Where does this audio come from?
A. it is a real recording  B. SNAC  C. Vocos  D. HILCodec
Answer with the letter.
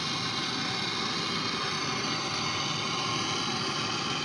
A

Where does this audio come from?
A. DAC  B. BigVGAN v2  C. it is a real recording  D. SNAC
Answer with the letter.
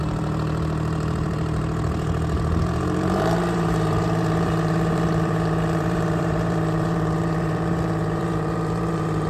B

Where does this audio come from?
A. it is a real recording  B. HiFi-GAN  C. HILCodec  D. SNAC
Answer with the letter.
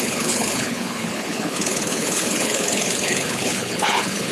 C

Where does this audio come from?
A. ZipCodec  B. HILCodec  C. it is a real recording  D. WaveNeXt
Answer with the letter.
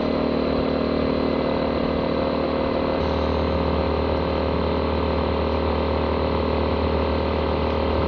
C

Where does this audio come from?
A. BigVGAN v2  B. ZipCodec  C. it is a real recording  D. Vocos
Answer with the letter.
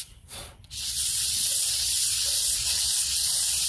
D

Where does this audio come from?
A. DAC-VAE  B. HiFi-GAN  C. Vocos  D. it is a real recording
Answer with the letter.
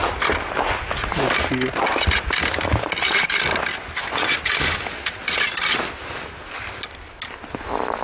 D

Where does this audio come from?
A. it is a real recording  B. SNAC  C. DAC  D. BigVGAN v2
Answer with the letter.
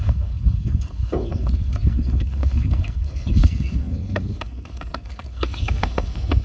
B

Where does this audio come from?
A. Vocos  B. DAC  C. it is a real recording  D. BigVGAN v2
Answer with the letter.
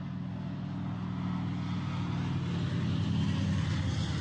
C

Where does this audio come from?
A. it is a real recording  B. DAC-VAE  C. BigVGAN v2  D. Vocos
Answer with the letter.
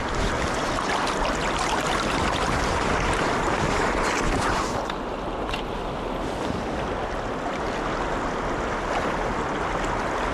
A